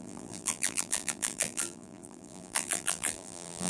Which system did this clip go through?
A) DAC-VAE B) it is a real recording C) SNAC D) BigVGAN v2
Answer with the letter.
D